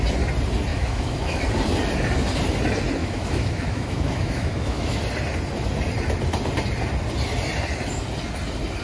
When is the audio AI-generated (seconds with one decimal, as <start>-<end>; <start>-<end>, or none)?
0.7-1.4; 3.0-5.0